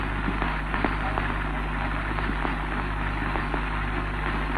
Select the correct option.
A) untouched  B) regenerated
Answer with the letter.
A